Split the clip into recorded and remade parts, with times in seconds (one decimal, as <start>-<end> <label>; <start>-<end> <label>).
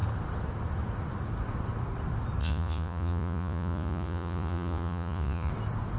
0.0-2.4 recorded; 2.4-5.5 remade; 5.5-6.0 recorded